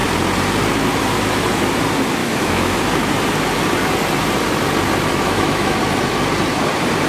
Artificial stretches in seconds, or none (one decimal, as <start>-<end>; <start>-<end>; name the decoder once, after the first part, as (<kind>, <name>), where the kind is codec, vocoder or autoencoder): 2.2-2.8 (autoencoder, DAC-VAE); 5.1-5.8